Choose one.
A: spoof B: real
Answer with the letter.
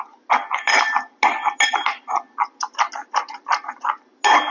B